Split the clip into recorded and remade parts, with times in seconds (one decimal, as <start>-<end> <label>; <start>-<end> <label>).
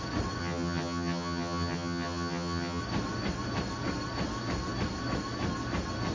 0.0-0.4 recorded; 0.4-2.8 remade; 2.8-6.1 recorded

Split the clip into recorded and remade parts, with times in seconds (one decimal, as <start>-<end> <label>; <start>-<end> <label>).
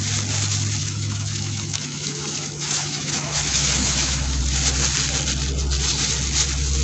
0.0-0.8 recorded; 0.8-4.4 remade; 4.4-6.8 recorded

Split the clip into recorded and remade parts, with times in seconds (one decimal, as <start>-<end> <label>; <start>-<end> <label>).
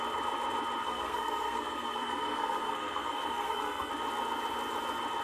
0.0-0.8 recorded; 0.8-3.9 remade; 3.9-5.2 recorded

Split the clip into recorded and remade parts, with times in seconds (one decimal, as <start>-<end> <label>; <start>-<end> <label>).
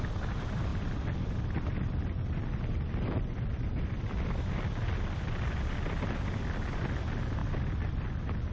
0.0-8.5 recorded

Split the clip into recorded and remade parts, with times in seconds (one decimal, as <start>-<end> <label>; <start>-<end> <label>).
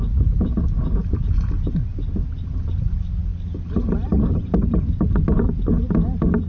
0.0-6.5 recorded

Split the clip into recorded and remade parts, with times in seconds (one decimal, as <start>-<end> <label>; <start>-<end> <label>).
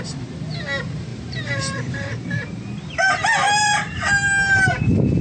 0.0-1.1 recorded; 1.1-4.0 remade; 4.0-5.2 recorded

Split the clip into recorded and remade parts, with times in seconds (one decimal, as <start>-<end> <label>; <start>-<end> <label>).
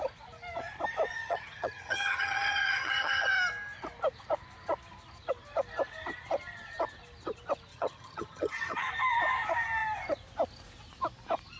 0.0-1.1 recorded; 1.1-3.3 remade; 3.3-7.7 recorded; 7.7-8.9 remade; 8.9-11.6 recorded